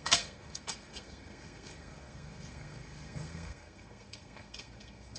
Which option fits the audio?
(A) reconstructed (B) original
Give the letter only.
A